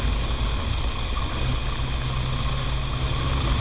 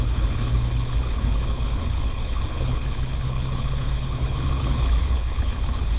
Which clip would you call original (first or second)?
first